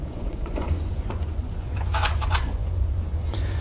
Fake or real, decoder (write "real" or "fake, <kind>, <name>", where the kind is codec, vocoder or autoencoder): fake, vocoder, Vocos